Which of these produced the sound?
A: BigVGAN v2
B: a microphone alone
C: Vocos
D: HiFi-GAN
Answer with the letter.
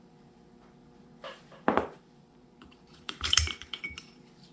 A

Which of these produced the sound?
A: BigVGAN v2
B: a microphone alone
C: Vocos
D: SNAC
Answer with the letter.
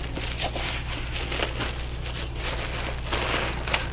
B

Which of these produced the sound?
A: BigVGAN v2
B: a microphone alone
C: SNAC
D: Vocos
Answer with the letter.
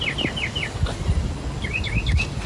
B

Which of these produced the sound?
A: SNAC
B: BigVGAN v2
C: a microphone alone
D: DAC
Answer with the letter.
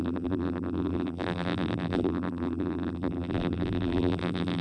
B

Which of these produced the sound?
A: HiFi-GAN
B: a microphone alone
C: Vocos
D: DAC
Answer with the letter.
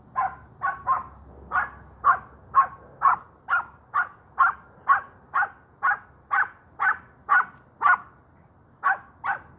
B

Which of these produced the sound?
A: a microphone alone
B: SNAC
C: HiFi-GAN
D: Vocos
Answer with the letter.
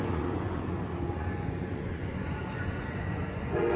D